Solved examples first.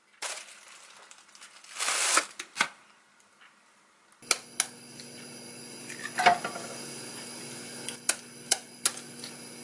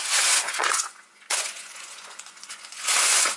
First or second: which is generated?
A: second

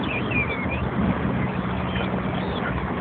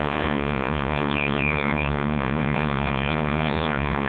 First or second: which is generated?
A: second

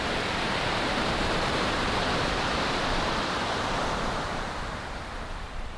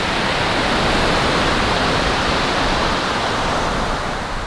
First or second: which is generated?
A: first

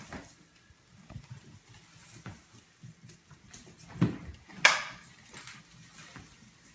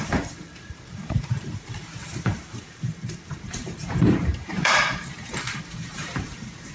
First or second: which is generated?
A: second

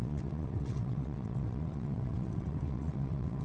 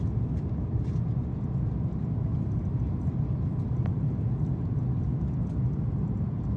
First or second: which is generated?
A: first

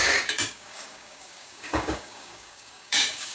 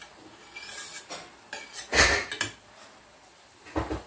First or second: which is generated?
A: first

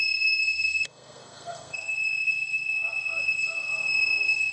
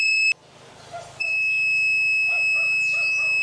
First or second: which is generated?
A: first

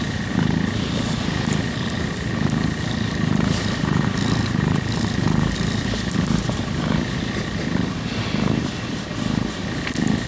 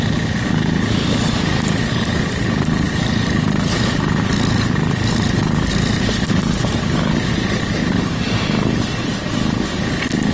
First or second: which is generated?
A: first